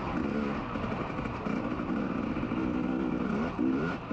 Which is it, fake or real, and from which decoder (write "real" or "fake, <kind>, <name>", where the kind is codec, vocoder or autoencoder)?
real